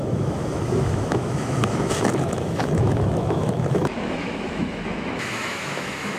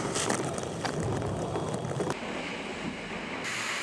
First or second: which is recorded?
second